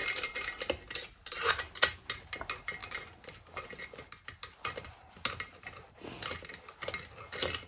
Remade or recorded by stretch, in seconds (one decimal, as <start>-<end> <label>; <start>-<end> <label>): 0.0-7.7 recorded